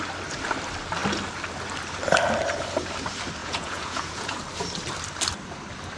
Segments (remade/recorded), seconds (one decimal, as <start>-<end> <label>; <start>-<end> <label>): 0.0-3.4 recorded; 3.4-4.4 remade; 4.4-6.0 recorded